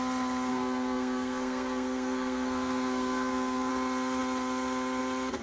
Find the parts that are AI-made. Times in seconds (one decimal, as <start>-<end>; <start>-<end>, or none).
0.5-3.7